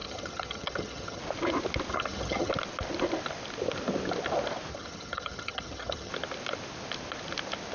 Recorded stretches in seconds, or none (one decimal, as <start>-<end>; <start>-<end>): 1.2-1.9; 2.5-4.7; 6.1-7.7